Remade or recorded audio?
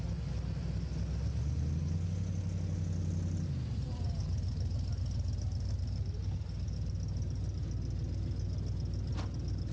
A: recorded